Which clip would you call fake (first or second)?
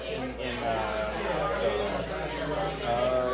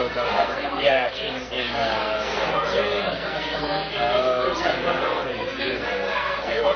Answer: second